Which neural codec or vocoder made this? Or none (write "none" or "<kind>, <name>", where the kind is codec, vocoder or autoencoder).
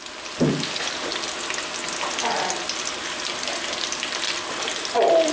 none